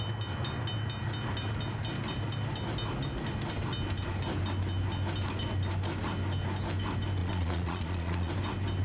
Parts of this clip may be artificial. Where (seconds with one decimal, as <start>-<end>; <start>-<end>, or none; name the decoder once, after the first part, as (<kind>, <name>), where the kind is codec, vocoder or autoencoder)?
7.2-8.3 (vocoder, Vocos)